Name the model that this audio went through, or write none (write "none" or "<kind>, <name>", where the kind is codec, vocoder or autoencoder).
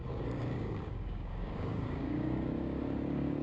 codec, DAC